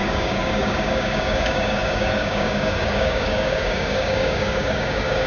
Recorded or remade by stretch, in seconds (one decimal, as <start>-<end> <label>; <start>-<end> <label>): 0.0-5.3 remade